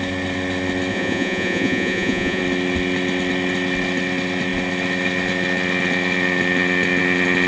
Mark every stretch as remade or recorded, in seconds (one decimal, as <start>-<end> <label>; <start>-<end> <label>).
0.0-0.9 recorded; 0.9-2.4 remade; 2.4-7.5 recorded